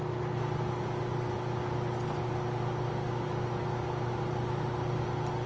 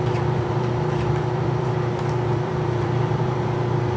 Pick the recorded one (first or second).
first